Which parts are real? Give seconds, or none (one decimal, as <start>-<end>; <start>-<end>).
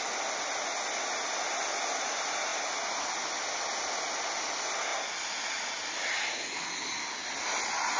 0.0-8.0